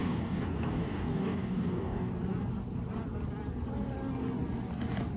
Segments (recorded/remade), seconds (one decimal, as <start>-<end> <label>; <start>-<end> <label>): 0.0-2.1 remade; 2.1-5.2 recorded